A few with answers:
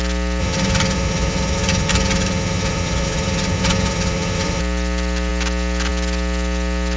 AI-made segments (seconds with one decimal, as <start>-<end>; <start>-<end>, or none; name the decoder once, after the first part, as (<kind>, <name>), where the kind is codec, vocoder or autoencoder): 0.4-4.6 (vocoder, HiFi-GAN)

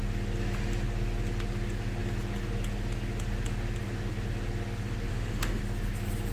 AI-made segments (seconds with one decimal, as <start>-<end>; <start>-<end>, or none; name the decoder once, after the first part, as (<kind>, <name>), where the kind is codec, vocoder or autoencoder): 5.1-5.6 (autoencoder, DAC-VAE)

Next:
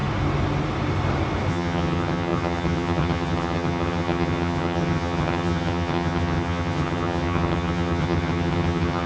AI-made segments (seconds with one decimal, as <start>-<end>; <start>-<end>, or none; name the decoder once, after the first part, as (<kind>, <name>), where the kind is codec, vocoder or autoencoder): 1.5-9.1 (vocoder, HiFi-GAN)

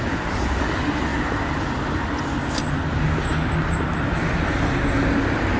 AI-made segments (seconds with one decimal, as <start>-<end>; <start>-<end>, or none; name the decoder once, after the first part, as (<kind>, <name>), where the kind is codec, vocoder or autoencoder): none

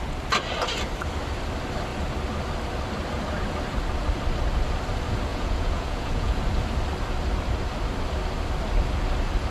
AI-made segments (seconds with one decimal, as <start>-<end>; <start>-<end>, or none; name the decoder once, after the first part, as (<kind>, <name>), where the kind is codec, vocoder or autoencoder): 5.3-6.4 (vocoder, Vocos)

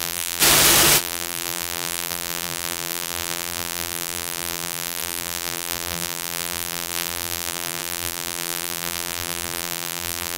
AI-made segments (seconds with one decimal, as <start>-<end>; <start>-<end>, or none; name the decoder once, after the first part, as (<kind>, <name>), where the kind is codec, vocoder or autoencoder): 0.0-0.4 (vocoder, BigVGAN v2); 1.0-10.4

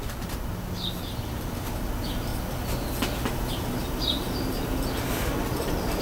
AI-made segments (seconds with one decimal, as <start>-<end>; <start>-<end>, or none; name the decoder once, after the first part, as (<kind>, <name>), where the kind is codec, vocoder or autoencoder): 0.0-2.3 (vocoder, BigVGAN v2); 3.5-6.0